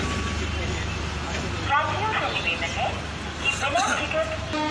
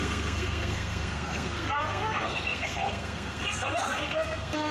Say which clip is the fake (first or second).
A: second